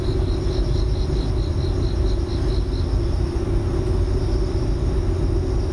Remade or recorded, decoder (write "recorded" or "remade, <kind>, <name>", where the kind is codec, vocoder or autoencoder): recorded